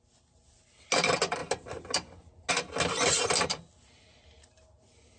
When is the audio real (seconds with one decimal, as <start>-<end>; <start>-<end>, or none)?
0.0-5.2